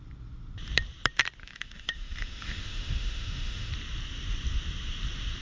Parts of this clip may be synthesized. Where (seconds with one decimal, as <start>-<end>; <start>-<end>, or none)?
1.4-3.7